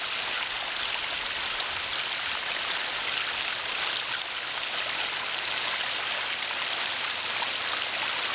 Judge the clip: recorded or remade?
recorded